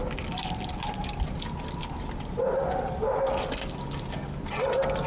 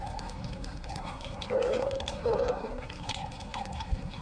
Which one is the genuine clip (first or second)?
first